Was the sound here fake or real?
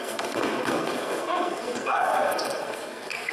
fake